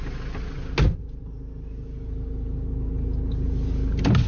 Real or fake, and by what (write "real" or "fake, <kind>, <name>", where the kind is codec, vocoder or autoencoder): real